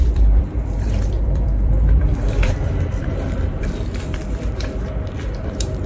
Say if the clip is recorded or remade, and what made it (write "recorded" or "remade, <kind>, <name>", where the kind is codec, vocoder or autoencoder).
remade, vocoder, BigVGAN v2